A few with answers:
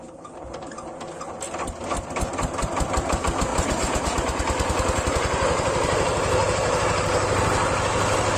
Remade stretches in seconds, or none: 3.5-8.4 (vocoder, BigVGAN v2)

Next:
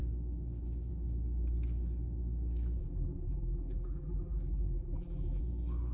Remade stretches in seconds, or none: 2.8-5.4 (vocoder, BigVGAN v2)

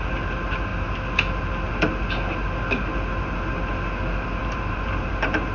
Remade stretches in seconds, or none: 4.4-5.1 (vocoder, BigVGAN v2)

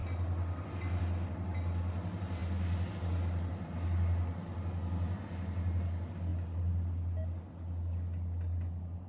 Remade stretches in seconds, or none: none